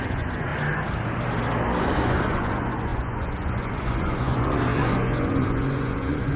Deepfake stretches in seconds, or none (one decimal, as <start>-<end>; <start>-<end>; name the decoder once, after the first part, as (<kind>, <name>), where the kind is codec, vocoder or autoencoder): 0.0-0.5 (vocoder, Vocos); 1.8-6.4